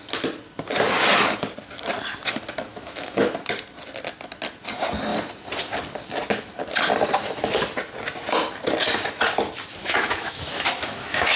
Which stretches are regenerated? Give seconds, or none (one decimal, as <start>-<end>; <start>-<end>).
2.7-3.4; 9.8-11.4